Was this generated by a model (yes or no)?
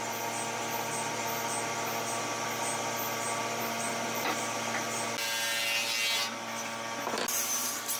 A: no